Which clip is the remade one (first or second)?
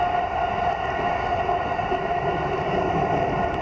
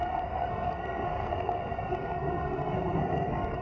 second